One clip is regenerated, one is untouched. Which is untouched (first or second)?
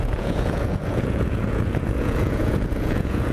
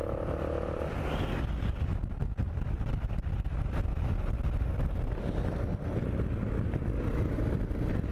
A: second